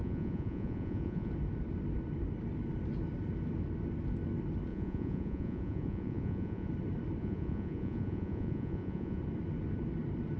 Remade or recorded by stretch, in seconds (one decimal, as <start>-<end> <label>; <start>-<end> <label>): 0.0-1.3 remade; 1.3-4.7 recorded; 4.7-6.7 remade; 6.7-7.2 recorded; 7.2-9.2 remade; 9.2-10.4 recorded